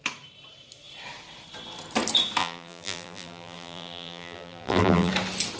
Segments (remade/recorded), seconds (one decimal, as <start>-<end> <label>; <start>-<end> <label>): 0.0-2.4 recorded; 2.4-5.1 remade; 5.1-5.6 recorded